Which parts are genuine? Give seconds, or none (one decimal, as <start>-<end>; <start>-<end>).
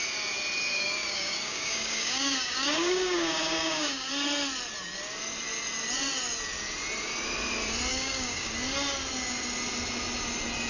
0.0-0.7; 4.1-7.9; 8.5-10.7